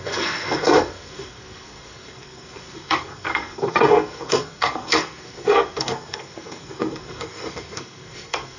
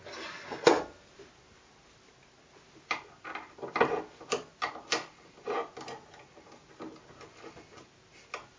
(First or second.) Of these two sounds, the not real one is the first